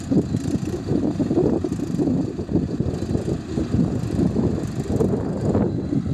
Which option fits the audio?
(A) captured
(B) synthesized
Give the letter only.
A